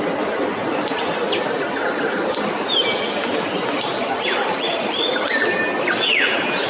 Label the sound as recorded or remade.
recorded